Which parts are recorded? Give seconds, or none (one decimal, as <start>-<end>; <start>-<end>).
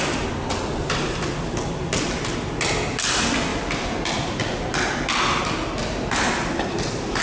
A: 0.0-7.2